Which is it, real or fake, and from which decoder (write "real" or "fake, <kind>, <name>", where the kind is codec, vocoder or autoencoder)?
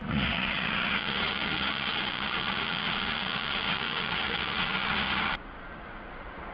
fake, vocoder, Vocos